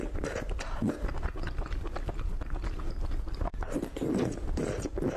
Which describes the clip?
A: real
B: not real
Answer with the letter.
A